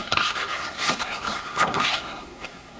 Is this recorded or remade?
remade